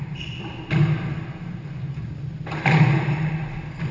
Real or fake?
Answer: real